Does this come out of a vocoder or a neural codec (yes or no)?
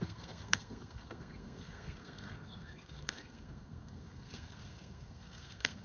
yes